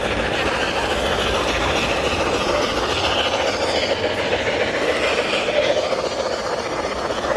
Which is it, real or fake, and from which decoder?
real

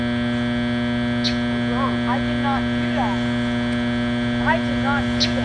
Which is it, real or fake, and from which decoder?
real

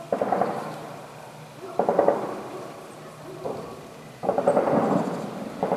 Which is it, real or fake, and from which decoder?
real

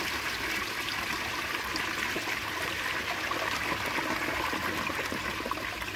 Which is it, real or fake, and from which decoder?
real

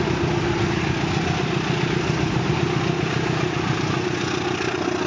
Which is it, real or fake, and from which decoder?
real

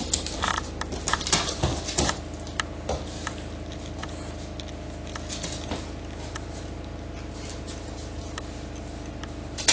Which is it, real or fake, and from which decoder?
real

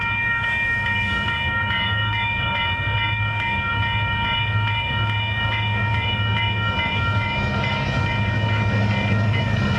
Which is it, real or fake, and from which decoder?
fake, codec, DAC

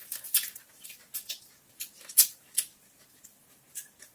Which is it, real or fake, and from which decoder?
real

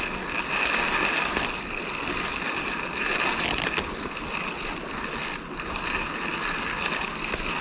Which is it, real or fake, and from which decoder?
real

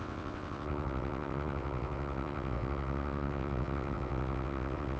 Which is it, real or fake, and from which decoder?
fake, vocoder, WaveNeXt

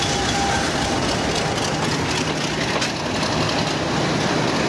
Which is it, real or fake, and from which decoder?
real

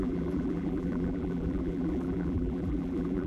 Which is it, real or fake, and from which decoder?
fake, vocoder, BigVGAN v2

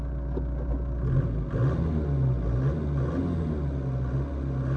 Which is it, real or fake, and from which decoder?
real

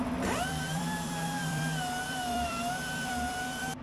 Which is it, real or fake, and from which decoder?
fake, vocoder, BigVGAN v2